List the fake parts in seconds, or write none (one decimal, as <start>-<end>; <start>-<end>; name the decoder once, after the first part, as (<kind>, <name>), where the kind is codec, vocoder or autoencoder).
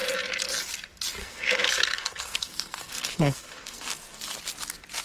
1.2-4.2 (codec, SNAC)